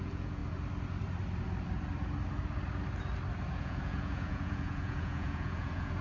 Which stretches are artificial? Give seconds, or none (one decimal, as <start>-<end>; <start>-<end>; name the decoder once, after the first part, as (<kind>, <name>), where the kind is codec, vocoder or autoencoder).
0.0-0.4 (vocoder, Vocos); 3.6-6.0